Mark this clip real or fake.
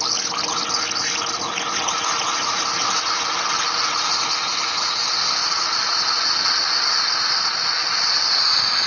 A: real